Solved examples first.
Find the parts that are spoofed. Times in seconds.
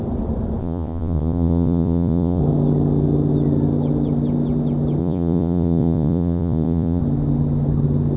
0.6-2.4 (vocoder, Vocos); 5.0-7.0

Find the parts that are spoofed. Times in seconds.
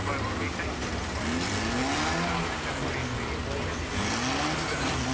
none